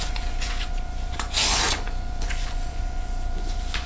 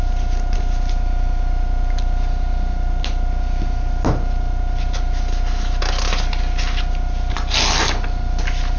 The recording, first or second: second